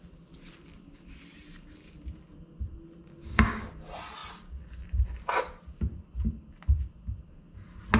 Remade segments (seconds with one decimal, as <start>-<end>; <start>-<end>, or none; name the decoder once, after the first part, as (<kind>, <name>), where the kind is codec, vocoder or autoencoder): 3.2-3.7 (codec, DAC)